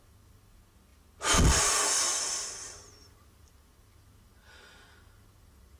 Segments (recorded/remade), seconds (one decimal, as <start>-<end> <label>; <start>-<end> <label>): 0.0-5.8 recorded